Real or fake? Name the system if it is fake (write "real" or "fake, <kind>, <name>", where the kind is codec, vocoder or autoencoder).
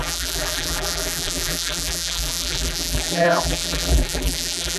fake, vocoder, BigVGAN v2